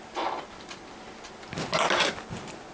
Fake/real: real